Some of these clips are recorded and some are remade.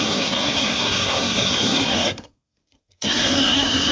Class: remade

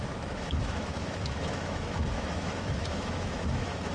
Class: remade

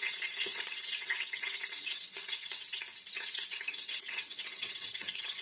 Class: remade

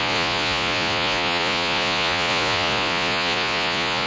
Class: remade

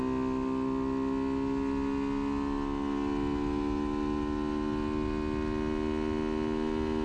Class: recorded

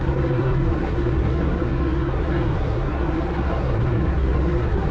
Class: remade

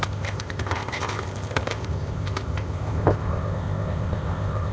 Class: remade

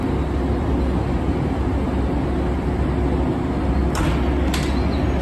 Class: recorded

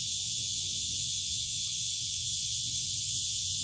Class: remade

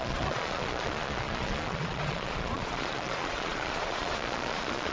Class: remade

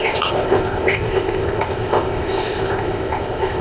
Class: remade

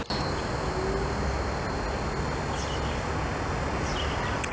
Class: recorded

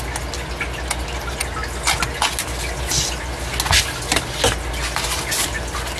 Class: recorded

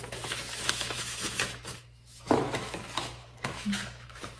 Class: remade